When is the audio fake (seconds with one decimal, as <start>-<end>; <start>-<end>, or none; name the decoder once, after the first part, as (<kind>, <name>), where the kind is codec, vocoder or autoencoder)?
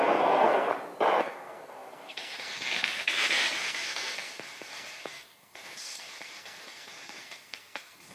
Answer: 0.0-0.7 (codec, SNAC); 1.2-8.1